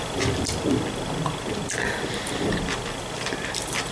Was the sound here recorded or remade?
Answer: recorded